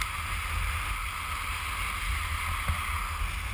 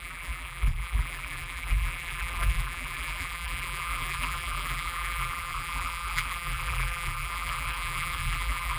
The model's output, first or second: second